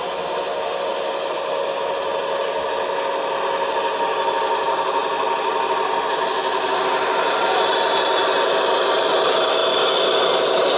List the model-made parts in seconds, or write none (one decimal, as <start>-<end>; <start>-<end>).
none